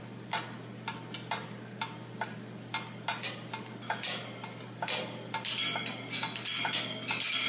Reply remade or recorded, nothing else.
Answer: recorded